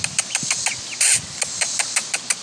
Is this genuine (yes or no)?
yes